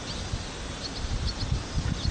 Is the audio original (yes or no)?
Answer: yes